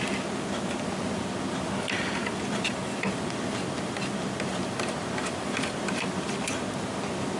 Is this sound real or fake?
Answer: real